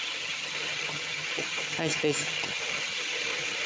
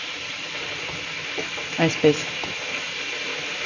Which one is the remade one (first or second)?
first